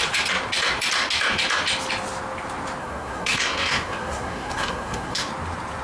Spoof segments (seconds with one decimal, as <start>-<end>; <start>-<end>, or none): 2.8-5.3